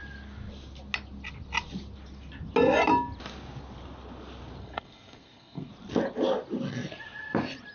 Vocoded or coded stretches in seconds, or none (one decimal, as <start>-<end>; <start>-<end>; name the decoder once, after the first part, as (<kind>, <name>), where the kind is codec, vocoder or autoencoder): 4.6-5.7 (codec, SNAC)